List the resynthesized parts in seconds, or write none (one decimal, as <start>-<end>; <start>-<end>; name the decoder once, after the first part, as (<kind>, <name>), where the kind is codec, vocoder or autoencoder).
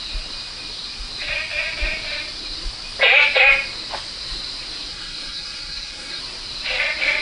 4.9-6.2 (codec, SNAC)